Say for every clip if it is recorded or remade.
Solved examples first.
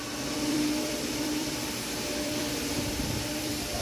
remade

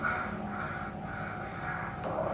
recorded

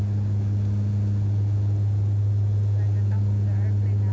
recorded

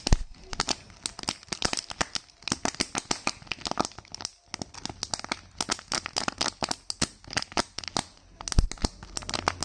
recorded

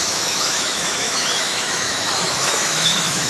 remade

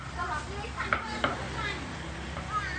recorded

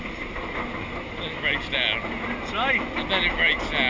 recorded